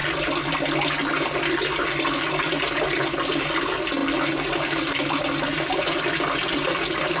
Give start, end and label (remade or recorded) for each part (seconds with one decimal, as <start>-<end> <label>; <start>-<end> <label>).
0.0-7.2 recorded